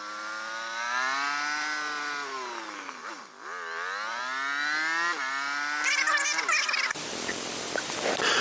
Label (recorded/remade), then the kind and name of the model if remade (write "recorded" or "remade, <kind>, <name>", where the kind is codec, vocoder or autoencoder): recorded